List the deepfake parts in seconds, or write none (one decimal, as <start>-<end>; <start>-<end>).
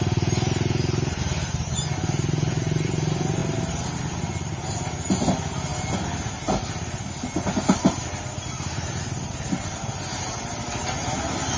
none